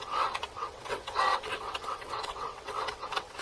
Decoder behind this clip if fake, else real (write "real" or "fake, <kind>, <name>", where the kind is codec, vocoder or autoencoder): fake, vocoder, WaveNeXt